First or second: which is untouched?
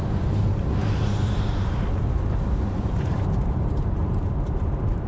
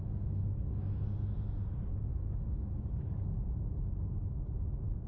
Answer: second